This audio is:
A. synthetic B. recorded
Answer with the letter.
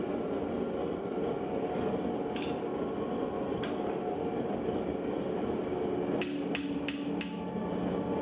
B